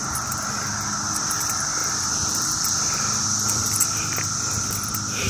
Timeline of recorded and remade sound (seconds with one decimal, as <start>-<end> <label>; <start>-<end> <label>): 0.0-5.3 remade